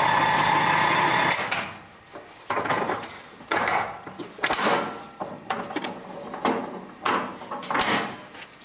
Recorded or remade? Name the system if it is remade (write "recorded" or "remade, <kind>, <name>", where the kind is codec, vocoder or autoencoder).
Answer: recorded